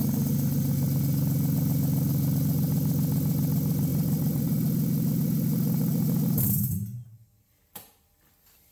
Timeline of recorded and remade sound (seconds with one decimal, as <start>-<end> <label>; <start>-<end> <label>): 0.0-8.7 recorded